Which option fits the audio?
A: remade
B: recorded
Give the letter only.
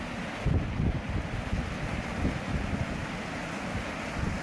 B